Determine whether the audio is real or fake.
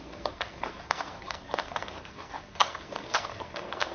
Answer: fake